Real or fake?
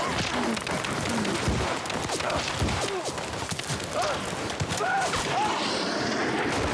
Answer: real